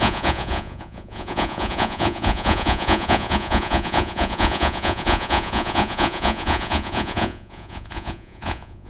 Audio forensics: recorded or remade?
remade